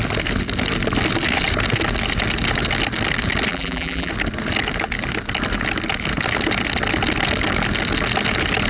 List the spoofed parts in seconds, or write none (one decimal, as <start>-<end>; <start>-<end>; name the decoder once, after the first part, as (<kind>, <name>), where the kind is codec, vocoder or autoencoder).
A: 3.5-4.1 (vocoder, BigVGAN v2)